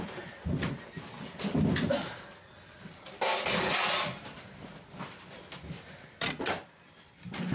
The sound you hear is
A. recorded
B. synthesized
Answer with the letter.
A